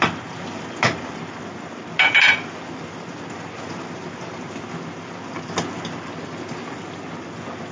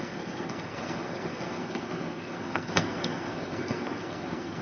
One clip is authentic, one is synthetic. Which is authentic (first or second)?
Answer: first